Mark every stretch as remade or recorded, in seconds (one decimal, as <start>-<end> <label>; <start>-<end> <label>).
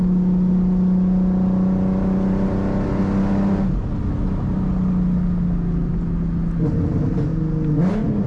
0.0-8.3 recorded